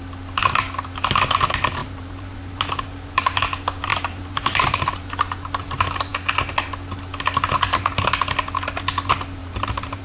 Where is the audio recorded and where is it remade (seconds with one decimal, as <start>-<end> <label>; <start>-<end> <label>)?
0.0-1.8 recorded; 1.8-3.4 remade; 3.4-3.9 recorded; 3.9-5.1 remade; 5.1-9.4 recorded; 9.4-10.0 remade